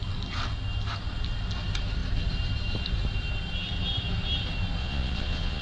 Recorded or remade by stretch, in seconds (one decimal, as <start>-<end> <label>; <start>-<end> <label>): 0.0-4.8 recorded; 4.8-5.6 remade